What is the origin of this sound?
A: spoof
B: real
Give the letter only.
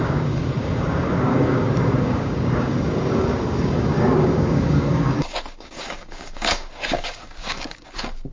A